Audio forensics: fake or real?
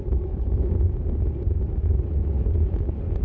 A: real